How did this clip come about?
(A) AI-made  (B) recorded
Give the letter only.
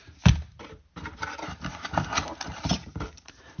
A